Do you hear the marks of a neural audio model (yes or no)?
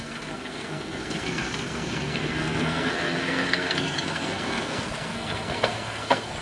yes